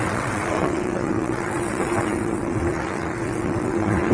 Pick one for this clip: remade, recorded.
remade